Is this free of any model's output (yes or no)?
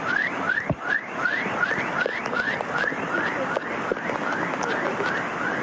yes